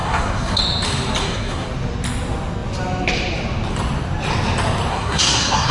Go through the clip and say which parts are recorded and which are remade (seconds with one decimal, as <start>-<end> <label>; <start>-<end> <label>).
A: 0.0-0.6 remade; 0.6-1.2 recorded; 1.2-1.7 remade; 1.7-4.9 recorded; 4.9-5.7 remade